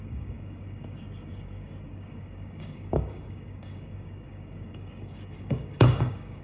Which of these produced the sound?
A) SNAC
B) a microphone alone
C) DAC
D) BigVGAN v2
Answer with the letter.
C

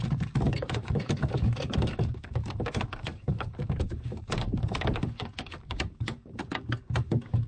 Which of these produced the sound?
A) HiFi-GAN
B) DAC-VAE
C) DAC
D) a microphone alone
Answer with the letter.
C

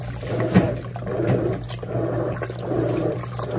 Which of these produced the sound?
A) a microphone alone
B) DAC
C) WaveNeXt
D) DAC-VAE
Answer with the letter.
A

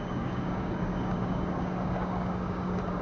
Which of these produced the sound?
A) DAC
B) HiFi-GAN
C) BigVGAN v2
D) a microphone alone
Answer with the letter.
A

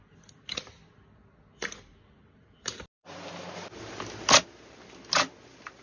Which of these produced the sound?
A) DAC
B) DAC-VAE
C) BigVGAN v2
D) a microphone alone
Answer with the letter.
D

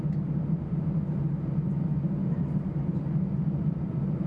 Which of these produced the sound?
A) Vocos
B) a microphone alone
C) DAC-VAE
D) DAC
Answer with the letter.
B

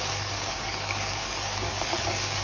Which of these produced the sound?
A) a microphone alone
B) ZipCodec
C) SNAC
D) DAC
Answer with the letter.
D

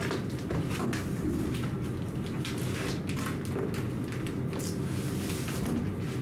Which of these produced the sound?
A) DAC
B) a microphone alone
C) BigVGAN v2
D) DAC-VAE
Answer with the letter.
B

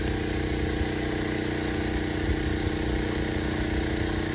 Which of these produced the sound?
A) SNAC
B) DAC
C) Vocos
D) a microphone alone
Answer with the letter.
D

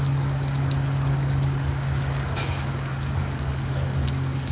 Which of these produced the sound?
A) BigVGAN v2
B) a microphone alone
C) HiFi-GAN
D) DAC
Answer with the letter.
D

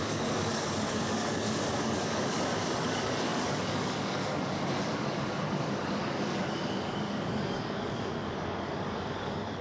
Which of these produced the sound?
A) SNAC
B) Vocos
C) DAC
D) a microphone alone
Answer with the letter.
C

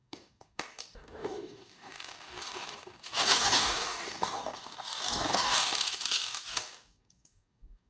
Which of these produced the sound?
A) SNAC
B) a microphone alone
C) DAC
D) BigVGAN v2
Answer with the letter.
C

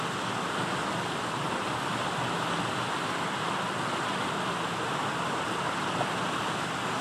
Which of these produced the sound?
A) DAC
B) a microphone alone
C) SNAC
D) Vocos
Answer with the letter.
B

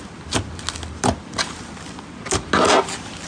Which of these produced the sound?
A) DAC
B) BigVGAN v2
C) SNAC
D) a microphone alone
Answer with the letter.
D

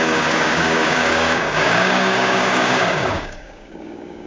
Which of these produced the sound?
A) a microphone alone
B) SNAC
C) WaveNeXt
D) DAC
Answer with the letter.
D